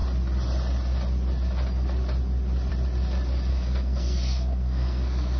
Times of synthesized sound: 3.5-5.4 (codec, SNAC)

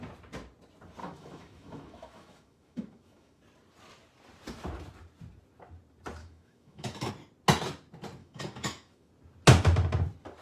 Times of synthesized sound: 1.0-3.4 (autoencoder, DAC-VAE); 6.2-7.1; 8.2-9.1

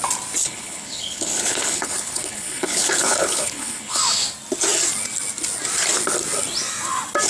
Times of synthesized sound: 0.4-4.0 (codec, HILCodec)

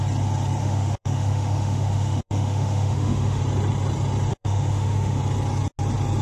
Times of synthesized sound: 0.6-3.4 (autoencoder, DAC-VAE); 4.3-5.2